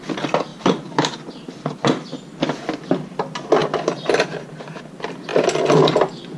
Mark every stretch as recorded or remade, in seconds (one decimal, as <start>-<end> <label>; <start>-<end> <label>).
0.0-0.5 recorded; 0.5-1.1 remade; 1.1-3.6 recorded; 3.6-4.1 remade; 4.1-6.4 recorded